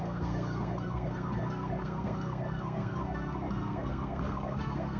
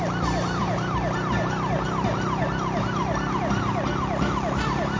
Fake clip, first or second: first